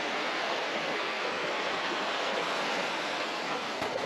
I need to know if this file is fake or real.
fake